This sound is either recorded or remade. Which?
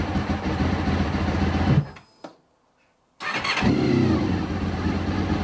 recorded